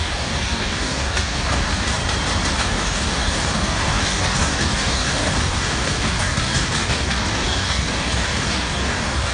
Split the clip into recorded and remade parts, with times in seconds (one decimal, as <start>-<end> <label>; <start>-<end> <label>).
0.0-2.0 remade; 2.0-2.5 recorded; 2.5-9.3 remade